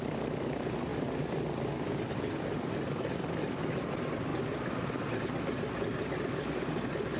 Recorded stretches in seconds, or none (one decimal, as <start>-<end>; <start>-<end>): 0.0-7.2